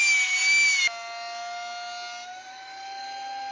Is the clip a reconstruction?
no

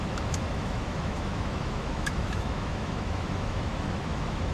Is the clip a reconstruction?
yes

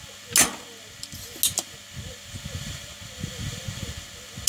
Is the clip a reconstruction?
no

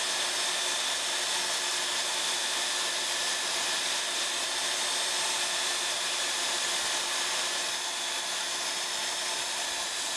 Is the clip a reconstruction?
no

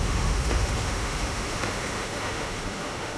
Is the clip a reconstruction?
yes